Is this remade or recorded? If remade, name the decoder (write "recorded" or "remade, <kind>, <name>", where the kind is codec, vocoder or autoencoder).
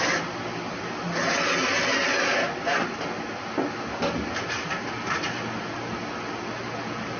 recorded